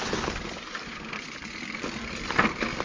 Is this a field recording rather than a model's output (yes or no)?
yes